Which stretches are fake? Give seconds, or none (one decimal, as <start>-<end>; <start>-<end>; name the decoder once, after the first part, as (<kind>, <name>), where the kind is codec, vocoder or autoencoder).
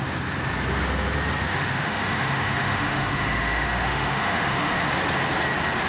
1.4-4.9 (autoencoder, DAC-VAE)